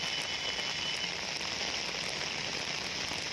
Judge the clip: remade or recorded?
recorded